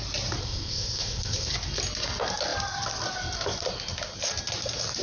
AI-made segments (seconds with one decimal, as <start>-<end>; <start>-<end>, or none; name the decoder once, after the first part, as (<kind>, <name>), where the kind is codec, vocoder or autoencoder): 0.4-1.5 (codec, ZipCodec)